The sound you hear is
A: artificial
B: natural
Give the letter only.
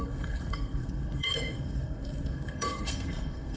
A